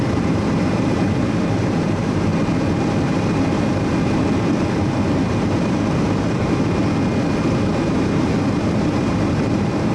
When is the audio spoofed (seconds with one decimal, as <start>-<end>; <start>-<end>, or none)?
0.0-2.3; 3.0-6.8; 7.4-9.9